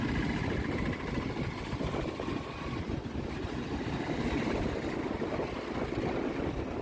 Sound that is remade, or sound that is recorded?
recorded